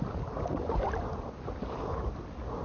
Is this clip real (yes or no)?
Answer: yes